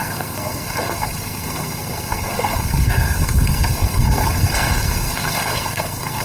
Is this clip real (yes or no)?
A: no